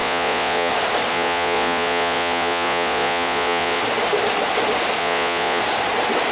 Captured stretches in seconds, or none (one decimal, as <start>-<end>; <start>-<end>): 0.7-1.1; 3.8-5.0; 5.6-6.3